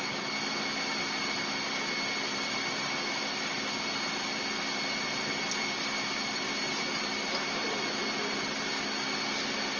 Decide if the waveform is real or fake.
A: real